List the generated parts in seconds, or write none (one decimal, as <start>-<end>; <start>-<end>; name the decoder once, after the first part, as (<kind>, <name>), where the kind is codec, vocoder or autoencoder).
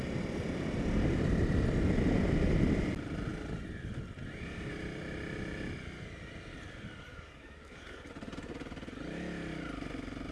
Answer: 7.1-8.1 (codec, DAC)